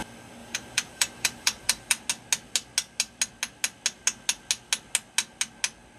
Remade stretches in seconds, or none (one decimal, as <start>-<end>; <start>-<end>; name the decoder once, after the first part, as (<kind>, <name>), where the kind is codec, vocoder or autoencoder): 0.4-2.1 (vocoder, BigVGAN v2)